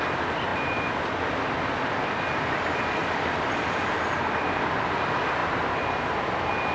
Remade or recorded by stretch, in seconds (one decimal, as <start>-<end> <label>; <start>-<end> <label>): 0.0-0.5 recorded; 0.5-1.3 remade; 1.3-3.0 recorded; 3.0-4.0 remade; 4.0-6.7 recorded